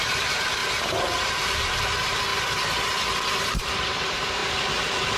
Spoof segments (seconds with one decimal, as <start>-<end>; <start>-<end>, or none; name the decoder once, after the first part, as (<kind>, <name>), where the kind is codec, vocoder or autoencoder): 0.0-2.3 (vocoder, BigVGAN v2); 3.3-4.4